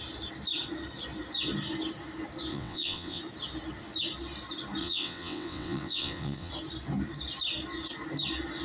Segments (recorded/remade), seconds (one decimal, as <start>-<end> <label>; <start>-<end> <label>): 0.0-2.5 recorded; 2.5-3.2 remade; 3.2-4.8 recorded; 4.8-6.5 remade; 6.5-8.6 recorded